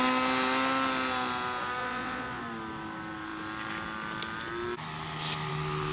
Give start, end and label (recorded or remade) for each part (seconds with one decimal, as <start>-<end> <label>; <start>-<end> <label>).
0.0-1.8 recorded; 1.8-2.4 remade; 2.4-5.9 recorded

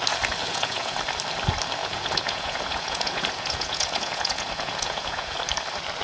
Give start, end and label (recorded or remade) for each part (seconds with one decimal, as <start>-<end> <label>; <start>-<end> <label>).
0.0-0.4 recorded; 0.4-1.0 remade; 1.0-1.8 recorded; 1.8-5.4 remade; 5.4-6.0 recorded

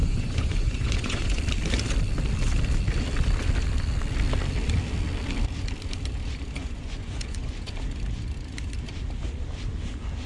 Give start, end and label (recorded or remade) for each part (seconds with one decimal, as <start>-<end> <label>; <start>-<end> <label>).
0.0-1.4 remade; 1.4-6.6 recorded; 6.6-7.7 remade; 7.7-10.3 recorded

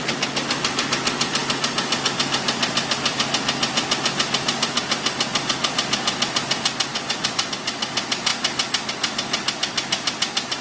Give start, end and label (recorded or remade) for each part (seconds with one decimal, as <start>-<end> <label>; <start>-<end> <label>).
0.0-6.9 recorded; 6.9-7.5 remade; 7.5-10.6 recorded

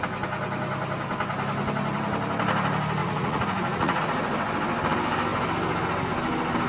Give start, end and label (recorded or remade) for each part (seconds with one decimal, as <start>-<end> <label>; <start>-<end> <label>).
0.0-3.0 recorded; 3.0-4.0 remade; 4.0-6.7 recorded

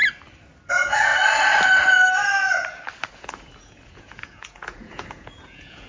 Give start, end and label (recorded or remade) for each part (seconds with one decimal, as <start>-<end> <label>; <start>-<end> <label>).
0.0-0.7 recorded; 0.7-1.1 remade; 1.1-3.1 recorded; 3.1-5.9 remade

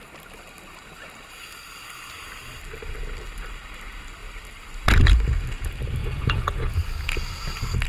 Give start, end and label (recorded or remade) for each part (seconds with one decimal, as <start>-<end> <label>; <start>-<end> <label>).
0.0-6.0 recorded; 6.0-6.7 remade; 6.7-7.9 recorded